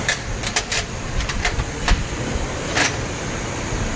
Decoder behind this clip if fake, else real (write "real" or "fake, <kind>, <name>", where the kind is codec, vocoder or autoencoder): fake, vocoder, BigVGAN v2